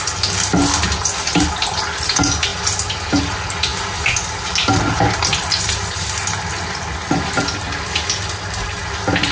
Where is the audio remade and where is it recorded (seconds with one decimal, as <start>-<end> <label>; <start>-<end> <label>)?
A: 0.0-9.3 recorded